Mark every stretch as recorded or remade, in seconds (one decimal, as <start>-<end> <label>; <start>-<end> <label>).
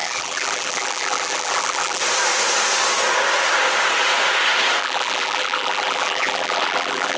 0.0-2.0 remade; 2.0-4.8 recorded; 4.8-7.2 remade